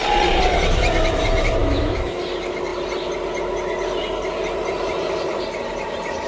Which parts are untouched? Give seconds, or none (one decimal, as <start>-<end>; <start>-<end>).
0.0-1.6; 2.2-6.3